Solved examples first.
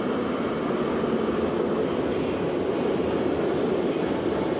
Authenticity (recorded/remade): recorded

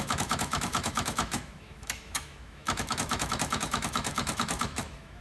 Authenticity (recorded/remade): remade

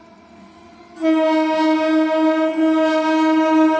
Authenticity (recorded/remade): recorded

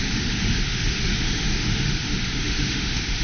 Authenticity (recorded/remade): remade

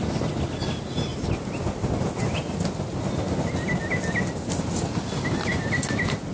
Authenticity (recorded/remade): recorded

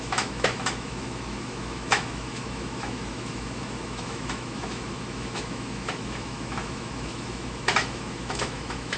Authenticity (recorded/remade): remade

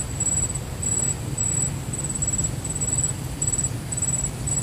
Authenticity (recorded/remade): recorded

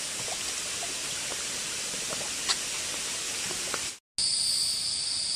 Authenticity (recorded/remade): recorded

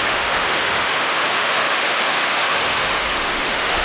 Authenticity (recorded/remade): remade